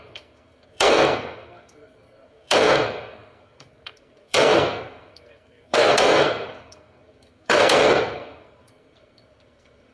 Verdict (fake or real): fake